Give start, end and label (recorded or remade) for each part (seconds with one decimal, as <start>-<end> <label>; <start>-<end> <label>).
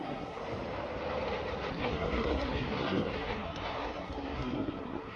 0.0-0.4 remade; 0.4-1.7 recorded; 1.7-5.2 remade